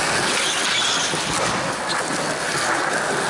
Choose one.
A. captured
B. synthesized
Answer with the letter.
A